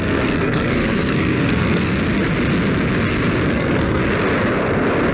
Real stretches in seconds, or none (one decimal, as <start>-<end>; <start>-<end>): 1.9-3.5; 4.0-5.1